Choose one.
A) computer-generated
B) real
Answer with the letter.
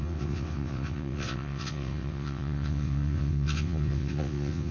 A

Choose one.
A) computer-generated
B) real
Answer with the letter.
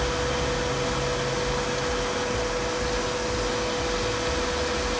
B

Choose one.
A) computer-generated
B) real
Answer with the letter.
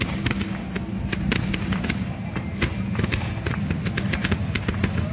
B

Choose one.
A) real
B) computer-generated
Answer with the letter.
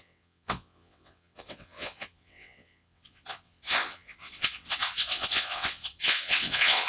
B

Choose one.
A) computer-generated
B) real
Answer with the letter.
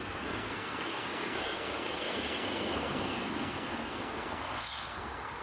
A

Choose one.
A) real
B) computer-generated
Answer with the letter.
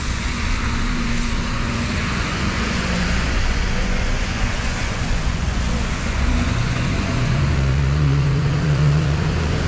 B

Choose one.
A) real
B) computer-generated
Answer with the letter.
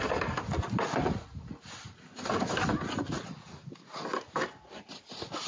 A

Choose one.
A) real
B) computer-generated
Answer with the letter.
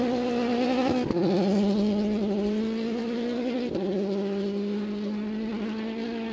A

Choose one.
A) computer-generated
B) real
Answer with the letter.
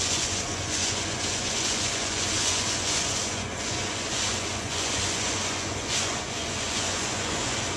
A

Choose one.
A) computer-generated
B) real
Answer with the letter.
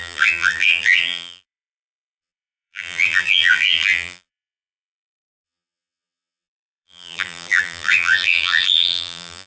A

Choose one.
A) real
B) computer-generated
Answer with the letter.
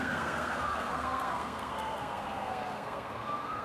B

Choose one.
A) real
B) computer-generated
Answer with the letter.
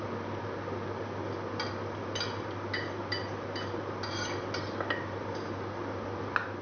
A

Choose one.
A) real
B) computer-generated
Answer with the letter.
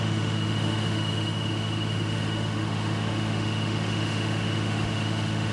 B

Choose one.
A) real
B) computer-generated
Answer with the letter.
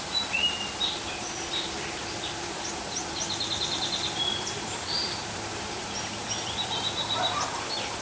B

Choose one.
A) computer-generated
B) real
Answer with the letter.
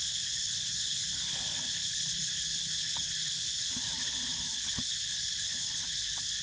A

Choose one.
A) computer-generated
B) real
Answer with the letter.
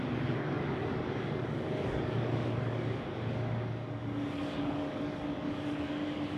A